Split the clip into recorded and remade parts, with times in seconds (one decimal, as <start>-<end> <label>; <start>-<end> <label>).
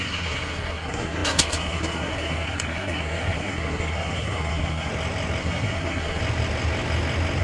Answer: 0.0-4.9 remade; 4.9-5.4 recorded; 5.4-6.2 remade; 6.2-7.4 recorded